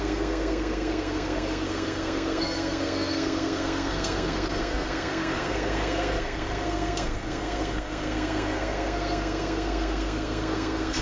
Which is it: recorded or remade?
remade